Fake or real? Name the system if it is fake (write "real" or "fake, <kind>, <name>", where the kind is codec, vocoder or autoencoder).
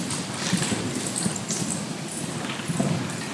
real